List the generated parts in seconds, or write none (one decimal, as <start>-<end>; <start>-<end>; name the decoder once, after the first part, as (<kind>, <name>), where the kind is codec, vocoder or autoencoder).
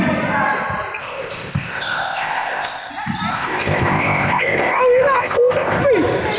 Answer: 1.0-2.9 (codec, ZipCodec); 3.3-4.8; 5.2-5.8